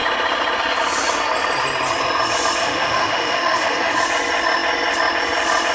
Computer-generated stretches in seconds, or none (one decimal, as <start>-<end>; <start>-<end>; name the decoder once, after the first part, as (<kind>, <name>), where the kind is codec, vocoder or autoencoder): 2.6-4.0 (autoencoder, DAC-VAE)